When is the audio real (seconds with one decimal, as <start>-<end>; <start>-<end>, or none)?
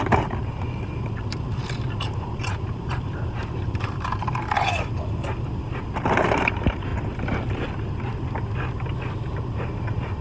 6.9-9.4